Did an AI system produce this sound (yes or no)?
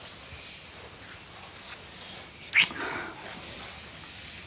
no